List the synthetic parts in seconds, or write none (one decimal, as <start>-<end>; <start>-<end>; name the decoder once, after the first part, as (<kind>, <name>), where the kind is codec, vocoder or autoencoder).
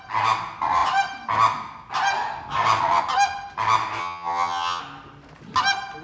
4.0-4.8 (vocoder, HiFi-GAN)